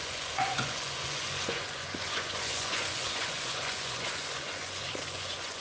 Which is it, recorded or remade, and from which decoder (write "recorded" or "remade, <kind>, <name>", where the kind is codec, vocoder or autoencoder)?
remade, vocoder, Vocos